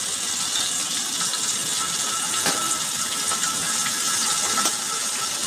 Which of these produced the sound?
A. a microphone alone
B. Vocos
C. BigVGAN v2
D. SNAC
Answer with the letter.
A